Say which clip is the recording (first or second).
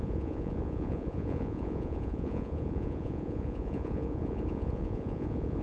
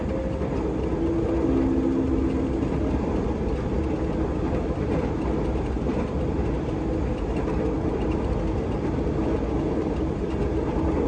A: second